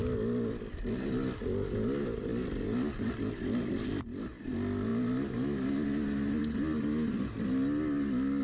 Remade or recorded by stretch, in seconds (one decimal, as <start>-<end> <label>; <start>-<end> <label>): 0.0-8.4 recorded

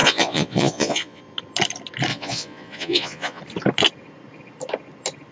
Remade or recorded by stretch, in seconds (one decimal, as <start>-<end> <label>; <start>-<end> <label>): 0.0-1.2 remade; 1.2-2.1 recorded; 2.1-3.4 remade; 3.4-5.3 recorded

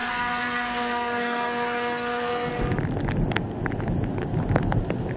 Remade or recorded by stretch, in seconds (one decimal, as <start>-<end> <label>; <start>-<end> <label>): 0.0-2.5 remade; 2.5-5.2 recorded

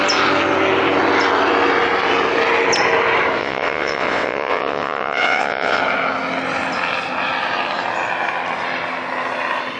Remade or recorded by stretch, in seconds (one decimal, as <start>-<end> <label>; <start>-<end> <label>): 0.0-3.4 recorded; 3.4-5.8 remade; 5.8-9.8 recorded

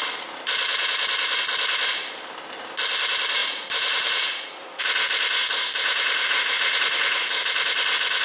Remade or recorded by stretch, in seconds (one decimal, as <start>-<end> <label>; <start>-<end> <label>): 0.0-3.4 recorded; 3.4-4.8 remade; 4.8-5.9 recorded; 5.9-7.2 remade; 7.2-8.2 recorded

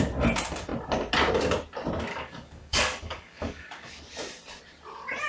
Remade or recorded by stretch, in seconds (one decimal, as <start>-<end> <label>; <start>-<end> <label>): 0.0-2.1 recorded; 2.1-4.0 remade; 4.0-5.3 recorded